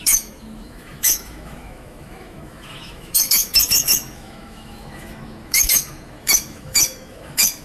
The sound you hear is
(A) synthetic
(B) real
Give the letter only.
A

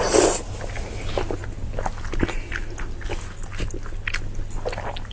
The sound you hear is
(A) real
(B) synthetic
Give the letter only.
A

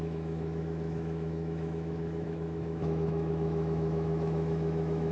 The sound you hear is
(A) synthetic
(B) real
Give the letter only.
A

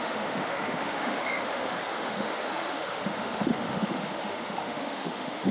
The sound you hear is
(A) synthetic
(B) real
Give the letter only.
A